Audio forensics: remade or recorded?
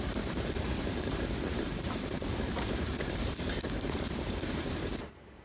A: remade